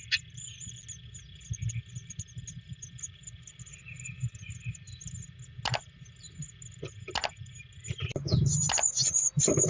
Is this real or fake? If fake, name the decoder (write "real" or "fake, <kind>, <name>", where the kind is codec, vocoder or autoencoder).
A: real